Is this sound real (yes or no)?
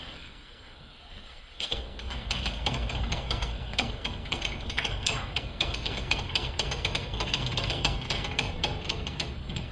no